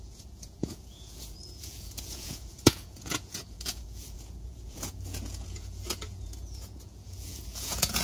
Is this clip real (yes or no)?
no